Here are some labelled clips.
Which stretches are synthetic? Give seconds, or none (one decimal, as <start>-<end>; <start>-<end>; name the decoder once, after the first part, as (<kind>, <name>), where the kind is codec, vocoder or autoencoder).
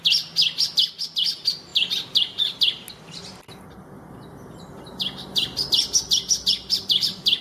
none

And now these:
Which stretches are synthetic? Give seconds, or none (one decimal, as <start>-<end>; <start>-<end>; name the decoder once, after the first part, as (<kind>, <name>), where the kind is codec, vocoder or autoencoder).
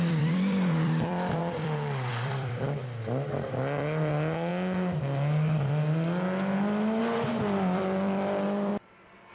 0.0-2.8 (vocoder, BigVGAN v2); 4.1-4.5; 7.0-8.7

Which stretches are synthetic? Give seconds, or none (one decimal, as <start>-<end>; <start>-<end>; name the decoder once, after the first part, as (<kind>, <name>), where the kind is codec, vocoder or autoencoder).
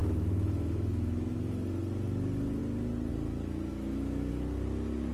0.0-1.4 (autoencoder, DAC-VAE); 3.7-4.3